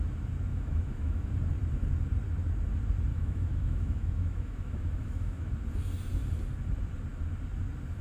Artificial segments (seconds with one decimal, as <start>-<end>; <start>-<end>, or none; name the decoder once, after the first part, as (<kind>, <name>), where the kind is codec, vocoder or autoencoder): 0.5-1.3 (autoencoder, DAC-VAE); 3.1-5.5